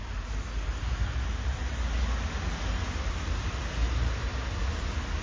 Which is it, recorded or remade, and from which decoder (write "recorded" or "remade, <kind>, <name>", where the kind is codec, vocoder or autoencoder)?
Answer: recorded